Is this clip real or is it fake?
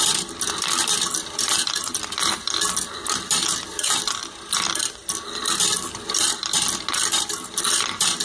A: fake